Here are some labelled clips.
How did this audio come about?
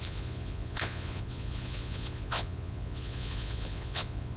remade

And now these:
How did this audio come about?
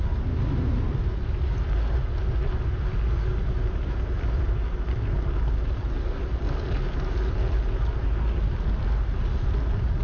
recorded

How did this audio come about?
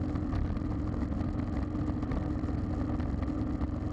recorded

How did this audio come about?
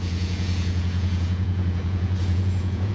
remade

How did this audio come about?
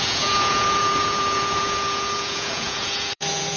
remade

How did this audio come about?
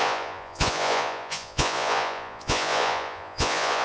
remade